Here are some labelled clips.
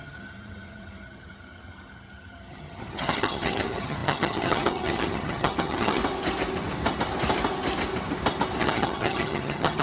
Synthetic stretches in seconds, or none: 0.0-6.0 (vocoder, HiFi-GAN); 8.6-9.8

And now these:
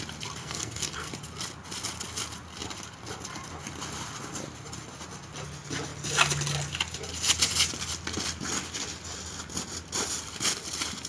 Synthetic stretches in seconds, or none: 0.4-1.1 (codec, SNAC)

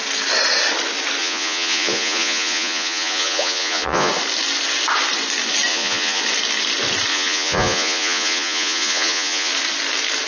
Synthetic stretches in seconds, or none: 1.2-4.1 (vocoder, Vocos); 5.7-6.2; 7.1-9.5

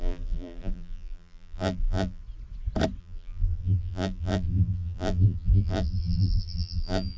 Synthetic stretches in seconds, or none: 0.0-2.2 (vocoder, BigVGAN v2); 3.0-7.2

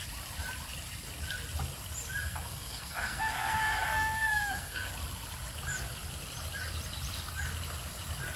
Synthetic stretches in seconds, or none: 2.2-4.9 (codec, SNAC)

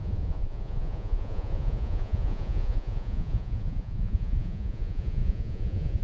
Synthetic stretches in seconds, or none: 0.0-6.0 (vocoder, Vocos)